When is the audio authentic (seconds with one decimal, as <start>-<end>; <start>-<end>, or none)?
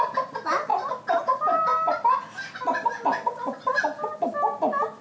0.0-5.0